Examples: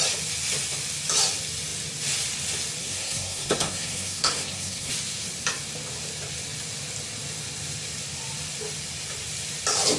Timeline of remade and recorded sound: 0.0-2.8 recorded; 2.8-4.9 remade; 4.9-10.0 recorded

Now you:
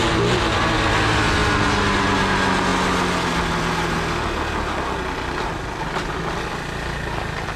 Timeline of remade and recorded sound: 0.0-7.6 recorded

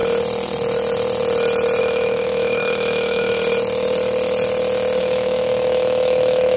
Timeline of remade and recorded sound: 0.0-1.8 recorded; 1.8-3.4 remade; 3.4-5.0 recorded; 5.0-6.6 remade

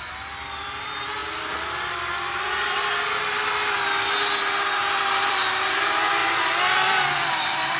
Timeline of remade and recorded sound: 0.0-4.8 recorded; 4.8-5.4 remade; 5.4-6.2 recorded; 6.2-7.8 remade

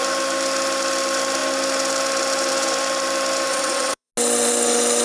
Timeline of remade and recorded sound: 0.0-3.5 recorded; 3.5-4.1 remade; 4.1-5.0 recorded

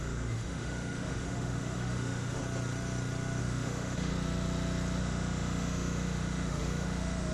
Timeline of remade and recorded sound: 0.0-2.4 remade; 2.4-3.4 recorded; 3.4-4.1 remade; 4.1-5.0 recorded; 5.0-7.3 remade

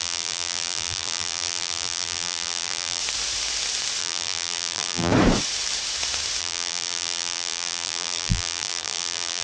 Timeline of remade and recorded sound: 0.0-3.0 remade; 3.0-4.0 recorded; 4.0-5.1 remade; 5.1-6.4 recorded; 6.4-9.4 remade

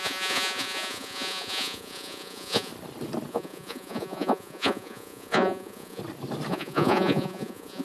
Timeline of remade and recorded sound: 0.0-2.7 remade; 2.7-3.3 recorded; 3.3-6.0 remade; 6.0-6.5 recorded; 6.5-7.8 remade